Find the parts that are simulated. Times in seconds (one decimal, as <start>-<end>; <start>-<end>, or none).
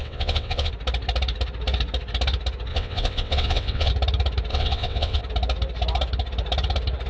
0.0-0.7; 2.7-3.9; 4.5-5.2